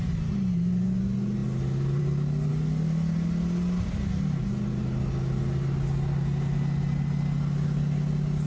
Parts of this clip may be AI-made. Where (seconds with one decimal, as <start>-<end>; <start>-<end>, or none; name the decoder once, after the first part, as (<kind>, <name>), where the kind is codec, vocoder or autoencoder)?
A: none